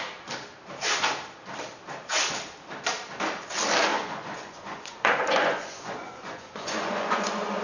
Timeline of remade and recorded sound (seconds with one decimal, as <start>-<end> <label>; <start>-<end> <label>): 0.0-3.9 recorded; 3.9-7.6 remade